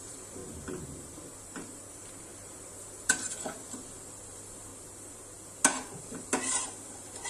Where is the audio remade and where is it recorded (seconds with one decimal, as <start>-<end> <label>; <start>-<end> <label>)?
0.0-0.4 remade; 0.4-1.4 recorded; 1.4-4.7 remade; 4.7-6.0 recorded; 6.0-7.3 remade